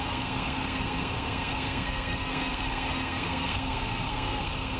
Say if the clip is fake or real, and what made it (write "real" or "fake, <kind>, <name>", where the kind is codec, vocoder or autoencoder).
fake, codec, SNAC